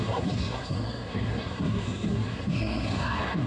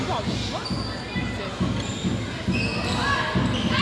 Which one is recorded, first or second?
second